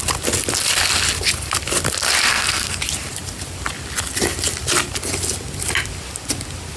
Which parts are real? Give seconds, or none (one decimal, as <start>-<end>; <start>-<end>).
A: 0.0-2.3; 2.8-6.8

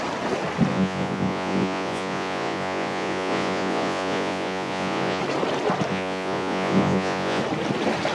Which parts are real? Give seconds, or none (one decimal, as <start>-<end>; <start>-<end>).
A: 0.0-0.7; 5.2-5.9; 7.4-8.1

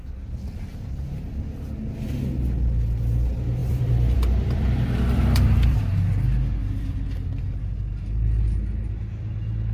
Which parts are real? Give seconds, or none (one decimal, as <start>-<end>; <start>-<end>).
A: 0.0-3.6; 5.8-9.7